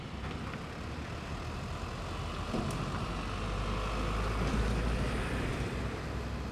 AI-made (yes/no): no